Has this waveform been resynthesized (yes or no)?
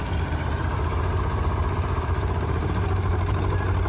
yes